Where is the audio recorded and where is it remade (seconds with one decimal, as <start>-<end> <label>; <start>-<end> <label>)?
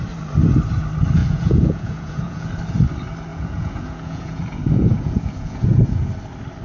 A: 0.0-1.2 recorded; 1.2-2.5 remade; 2.5-3.3 recorded; 3.3-6.1 remade; 6.1-6.6 recorded